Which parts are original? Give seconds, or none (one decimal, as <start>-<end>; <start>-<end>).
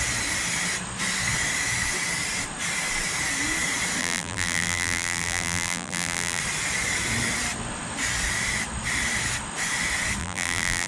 0.0-4.0; 6.4-10.2